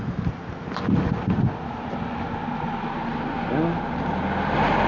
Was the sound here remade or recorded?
recorded